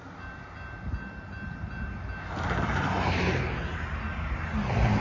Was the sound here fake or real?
real